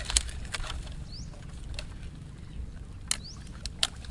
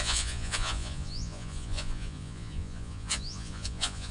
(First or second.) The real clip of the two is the first